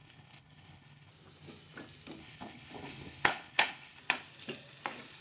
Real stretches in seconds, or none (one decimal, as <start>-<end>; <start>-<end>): 1.1-2.2; 4.0-5.2